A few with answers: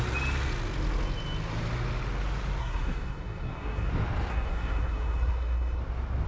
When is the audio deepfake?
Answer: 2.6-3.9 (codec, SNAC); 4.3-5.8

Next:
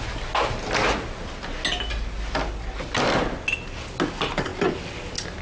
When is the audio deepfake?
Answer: none

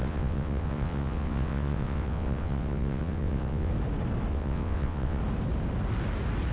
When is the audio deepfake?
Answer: 0.0-3.7 (vocoder, WaveNeXt); 4.3-5.2